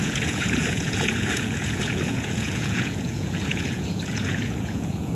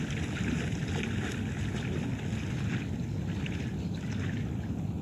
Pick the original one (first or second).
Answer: second